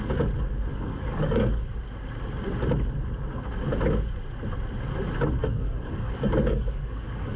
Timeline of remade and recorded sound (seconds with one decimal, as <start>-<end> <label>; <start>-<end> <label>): 0.0-0.7 recorded; 0.7-1.6 remade; 1.6-5.4 recorded; 5.4-7.4 remade